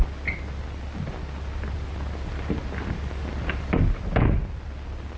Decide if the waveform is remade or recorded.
recorded